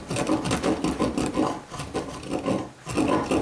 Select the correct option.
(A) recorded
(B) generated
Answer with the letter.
A